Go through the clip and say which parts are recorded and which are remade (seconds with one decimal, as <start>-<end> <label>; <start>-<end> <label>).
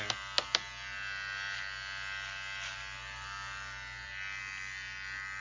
0.0-5.4 recorded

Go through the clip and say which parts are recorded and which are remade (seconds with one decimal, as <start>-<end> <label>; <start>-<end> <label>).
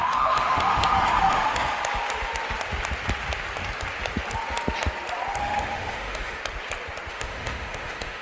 0.0-1.8 remade; 1.8-5.4 recorded; 5.4-6.4 remade; 6.4-7.1 recorded; 7.1-8.2 remade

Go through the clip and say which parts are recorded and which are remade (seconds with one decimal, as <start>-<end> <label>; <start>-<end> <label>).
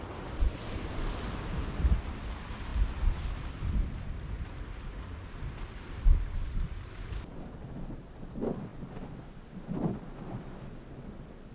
0.0-2.7 recorded; 2.7-7.1 remade; 7.1-11.5 recorded